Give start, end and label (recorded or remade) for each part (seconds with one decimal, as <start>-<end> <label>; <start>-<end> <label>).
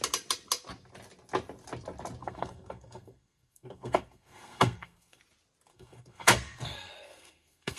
0.0-2.2 recorded; 2.2-5.2 remade; 5.2-5.7 recorded; 5.7-7.8 remade